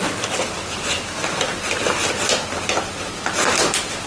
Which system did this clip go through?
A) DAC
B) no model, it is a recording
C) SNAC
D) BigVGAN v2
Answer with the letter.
B